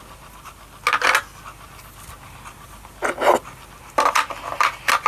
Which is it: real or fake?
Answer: real